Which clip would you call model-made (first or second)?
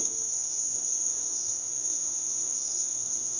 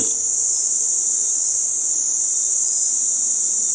first